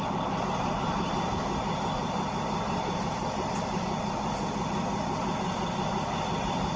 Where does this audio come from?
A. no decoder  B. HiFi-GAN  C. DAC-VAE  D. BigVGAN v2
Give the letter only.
A